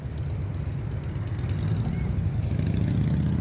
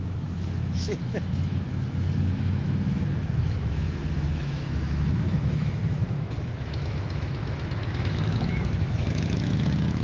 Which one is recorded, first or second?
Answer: first